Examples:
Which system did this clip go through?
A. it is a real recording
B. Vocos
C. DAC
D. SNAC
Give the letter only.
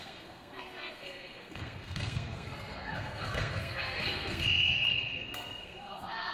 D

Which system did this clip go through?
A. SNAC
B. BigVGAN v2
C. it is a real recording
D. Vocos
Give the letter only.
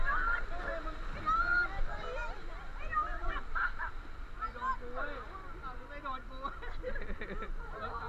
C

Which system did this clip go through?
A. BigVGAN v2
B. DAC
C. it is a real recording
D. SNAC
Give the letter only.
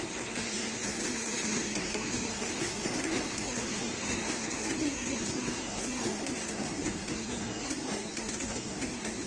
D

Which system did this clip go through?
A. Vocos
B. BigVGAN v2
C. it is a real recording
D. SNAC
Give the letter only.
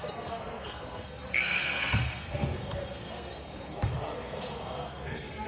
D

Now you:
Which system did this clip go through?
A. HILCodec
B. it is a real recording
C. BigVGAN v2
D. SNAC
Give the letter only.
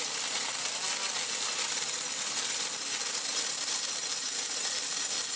B